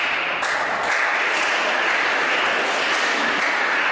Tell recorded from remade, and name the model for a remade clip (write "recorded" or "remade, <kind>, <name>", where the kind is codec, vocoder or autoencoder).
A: recorded